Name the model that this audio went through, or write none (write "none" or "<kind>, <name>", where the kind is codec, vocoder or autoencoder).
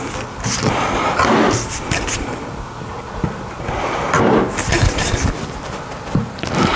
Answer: none